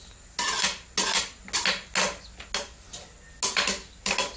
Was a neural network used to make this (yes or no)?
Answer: no